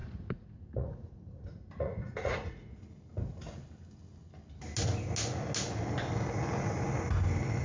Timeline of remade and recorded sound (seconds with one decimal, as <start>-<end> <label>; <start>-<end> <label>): 0.0-2.8 remade; 2.8-7.6 recorded